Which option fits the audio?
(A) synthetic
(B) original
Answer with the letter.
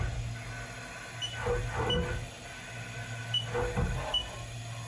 B